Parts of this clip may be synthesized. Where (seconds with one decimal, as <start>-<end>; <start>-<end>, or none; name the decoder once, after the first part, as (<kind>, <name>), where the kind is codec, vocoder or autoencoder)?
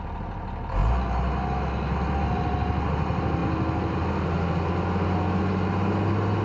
none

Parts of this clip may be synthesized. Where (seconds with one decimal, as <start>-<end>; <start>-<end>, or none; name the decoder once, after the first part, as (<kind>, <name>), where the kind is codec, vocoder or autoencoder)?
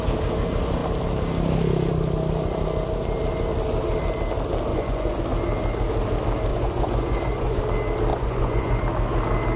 4.7-5.2 (vocoder, Vocos); 6.5-7.6; 8.1-8.8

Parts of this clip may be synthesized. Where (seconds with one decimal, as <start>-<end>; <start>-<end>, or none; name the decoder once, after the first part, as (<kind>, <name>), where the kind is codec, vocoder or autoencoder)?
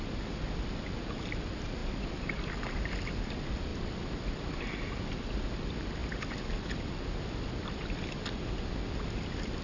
none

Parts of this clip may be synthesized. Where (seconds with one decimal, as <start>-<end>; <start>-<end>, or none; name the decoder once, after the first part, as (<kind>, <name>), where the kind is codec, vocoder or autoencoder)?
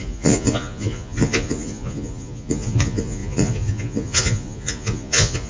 0.0-5.5 (vocoder, Vocos)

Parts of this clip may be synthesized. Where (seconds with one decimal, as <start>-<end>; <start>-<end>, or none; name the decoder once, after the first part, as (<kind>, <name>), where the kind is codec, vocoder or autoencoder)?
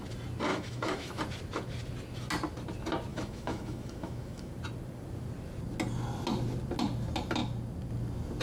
0.5-1.2 (autoencoder, DAC-VAE); 3.1-4.5